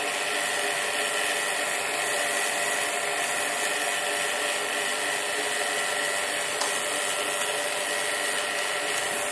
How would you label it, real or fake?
real